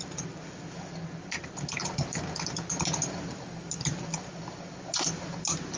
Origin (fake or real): real